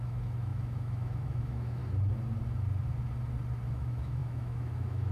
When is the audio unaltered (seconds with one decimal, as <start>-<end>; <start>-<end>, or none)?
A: 1.8-3.7